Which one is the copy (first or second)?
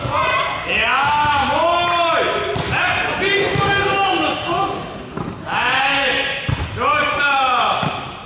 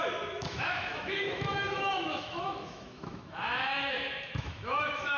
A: second